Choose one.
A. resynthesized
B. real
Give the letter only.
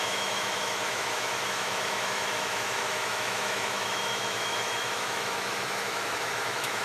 A